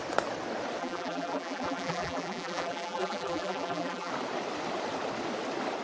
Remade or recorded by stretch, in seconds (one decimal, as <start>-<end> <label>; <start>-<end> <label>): 0.0-0.8 recorded; 0.8-4.1 remade; 4.1-5.8 recorded